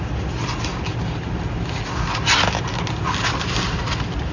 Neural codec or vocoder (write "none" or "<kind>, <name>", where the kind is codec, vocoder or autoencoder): none